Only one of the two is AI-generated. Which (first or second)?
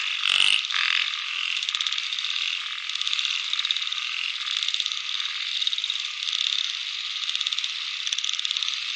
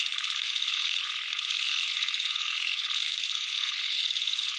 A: second